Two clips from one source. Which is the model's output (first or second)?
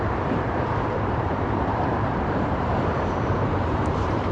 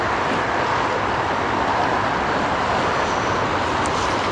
first